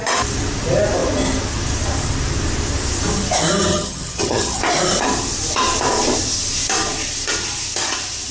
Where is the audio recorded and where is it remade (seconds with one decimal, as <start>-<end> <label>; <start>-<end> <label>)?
0.0-3.7 recorded; 3.7-4.6 remade; 4.6-8.3 recorded